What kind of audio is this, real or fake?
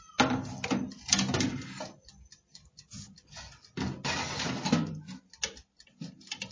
real